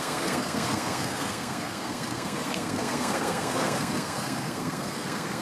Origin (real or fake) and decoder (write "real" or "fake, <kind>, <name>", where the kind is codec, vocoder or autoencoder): fake, codec, SNAC